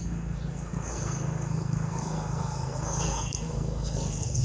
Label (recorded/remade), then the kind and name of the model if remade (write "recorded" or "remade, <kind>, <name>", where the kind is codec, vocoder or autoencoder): remade, codec, SNAC